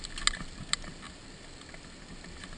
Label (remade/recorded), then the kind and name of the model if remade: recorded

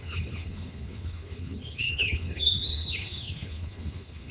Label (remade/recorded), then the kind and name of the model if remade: remade, codec, HILCodec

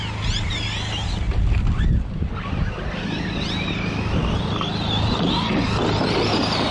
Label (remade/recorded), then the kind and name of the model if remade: recorded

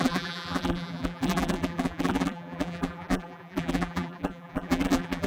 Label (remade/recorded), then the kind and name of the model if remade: remade, vocoder, BigVGAN v2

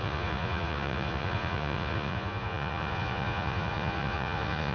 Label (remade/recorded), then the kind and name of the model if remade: remade, vocoder, Vocos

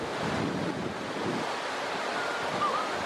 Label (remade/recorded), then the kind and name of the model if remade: recorded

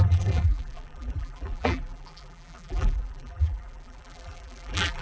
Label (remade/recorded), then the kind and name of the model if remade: remade, vocoder, BigVGAN v2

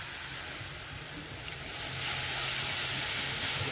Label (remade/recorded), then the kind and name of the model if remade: recorded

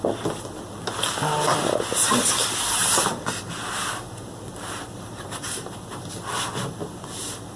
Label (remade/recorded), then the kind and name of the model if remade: recorded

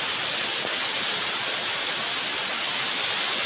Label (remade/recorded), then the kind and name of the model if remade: recorded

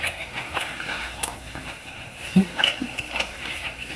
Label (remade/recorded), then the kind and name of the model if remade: remade, codec, SNAC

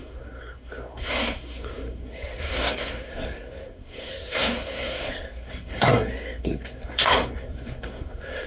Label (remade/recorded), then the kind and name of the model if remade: remade, codec, SNAC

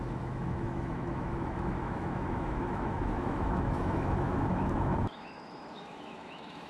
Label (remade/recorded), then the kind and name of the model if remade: remade, autoencoder, DAC-VAE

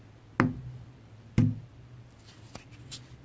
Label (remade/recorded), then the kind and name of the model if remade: recorded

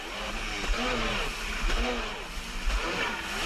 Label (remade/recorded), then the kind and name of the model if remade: recorded